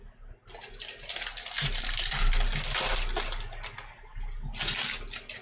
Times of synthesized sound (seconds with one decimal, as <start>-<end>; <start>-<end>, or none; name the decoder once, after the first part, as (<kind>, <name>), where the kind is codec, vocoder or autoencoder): none